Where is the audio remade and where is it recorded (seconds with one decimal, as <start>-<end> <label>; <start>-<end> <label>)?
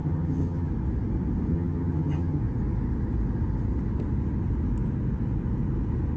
0.0-0.7 remade; 0.7-1.5 recorded; 1.5-2.4 remade; 2.4-6.2 recorded